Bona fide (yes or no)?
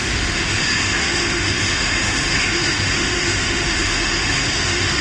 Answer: no